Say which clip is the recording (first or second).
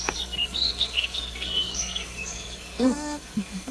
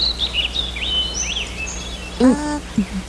second